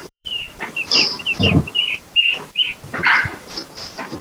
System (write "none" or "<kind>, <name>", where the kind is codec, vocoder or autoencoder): vocoder, BigVGAN v2